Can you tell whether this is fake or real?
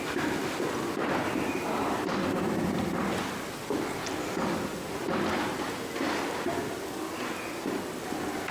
real